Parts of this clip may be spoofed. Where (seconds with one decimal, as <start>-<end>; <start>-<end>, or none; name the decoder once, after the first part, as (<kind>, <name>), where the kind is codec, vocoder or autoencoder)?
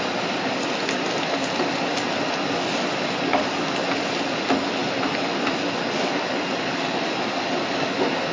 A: none